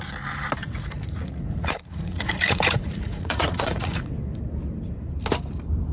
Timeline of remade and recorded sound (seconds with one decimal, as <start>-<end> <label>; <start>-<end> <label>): 0.0-0.6 recorded; 0.6-4.1 remade; 4.1-5.9 recorded